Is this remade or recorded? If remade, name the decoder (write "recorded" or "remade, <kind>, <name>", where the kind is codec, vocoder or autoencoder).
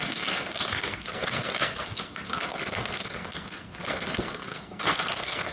remade, codec, SNAC